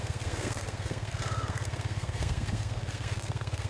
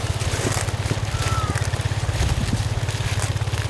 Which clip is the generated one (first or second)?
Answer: first